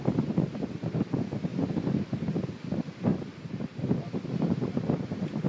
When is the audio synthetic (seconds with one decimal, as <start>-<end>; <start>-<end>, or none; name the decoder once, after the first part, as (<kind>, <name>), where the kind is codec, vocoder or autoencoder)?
0.0-5.5 (vocoder, BigVGAN v2)